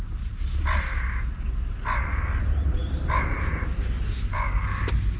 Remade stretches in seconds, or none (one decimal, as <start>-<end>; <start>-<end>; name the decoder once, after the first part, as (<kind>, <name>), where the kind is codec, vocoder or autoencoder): none